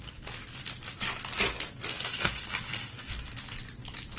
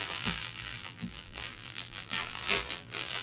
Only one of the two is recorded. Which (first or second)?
first